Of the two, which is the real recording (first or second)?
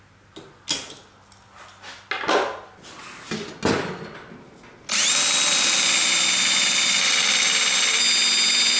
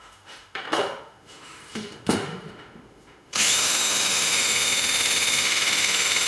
first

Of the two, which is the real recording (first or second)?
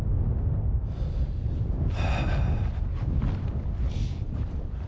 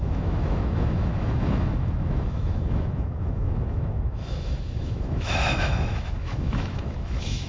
first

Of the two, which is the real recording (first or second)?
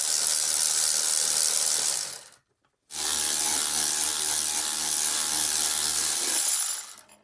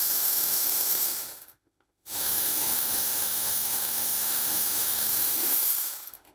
first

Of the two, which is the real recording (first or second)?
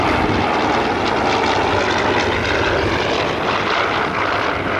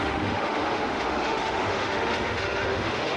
first